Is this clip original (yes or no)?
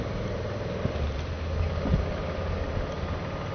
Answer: yes